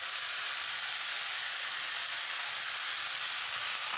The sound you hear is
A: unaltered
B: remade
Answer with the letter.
A